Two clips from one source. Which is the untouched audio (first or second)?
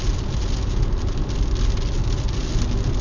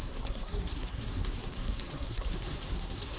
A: first